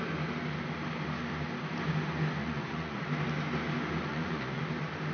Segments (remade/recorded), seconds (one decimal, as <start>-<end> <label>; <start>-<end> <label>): 0.0-2.4 recorded; 2.4-3.0 remade; 3.0-4.1 recorded; 4.1-4.6 remade; 4.6-5.1 recorded